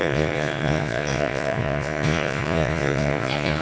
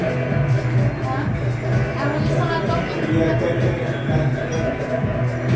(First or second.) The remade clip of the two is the first